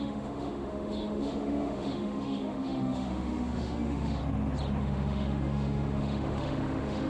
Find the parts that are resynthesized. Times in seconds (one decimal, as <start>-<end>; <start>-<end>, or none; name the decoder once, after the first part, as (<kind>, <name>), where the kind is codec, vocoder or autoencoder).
0.0-4.2 (autoencoder, DAC-VAE); 4.8-7.1